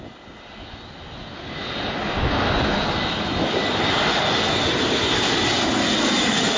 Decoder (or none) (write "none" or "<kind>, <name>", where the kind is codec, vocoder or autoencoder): none